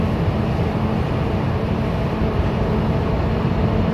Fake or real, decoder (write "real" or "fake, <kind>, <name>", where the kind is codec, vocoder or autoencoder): real